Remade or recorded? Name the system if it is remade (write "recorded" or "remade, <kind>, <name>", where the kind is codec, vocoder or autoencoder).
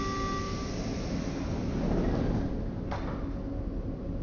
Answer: recorded